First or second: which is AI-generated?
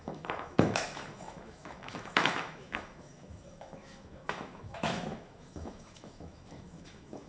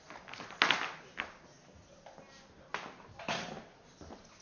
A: first